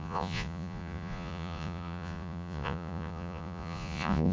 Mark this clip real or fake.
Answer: fake